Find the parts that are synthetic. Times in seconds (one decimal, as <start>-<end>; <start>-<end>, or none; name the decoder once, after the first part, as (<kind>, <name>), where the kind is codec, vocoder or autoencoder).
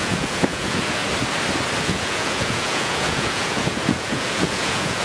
0.0-1.0 (vocoder, Vocos); 1.8-5.0